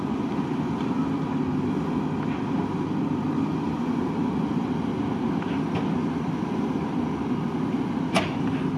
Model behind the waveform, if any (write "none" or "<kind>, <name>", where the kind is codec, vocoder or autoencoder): none